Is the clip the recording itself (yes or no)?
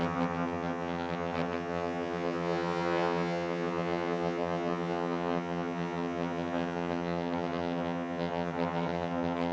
no